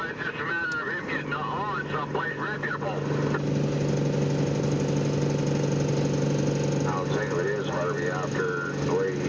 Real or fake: real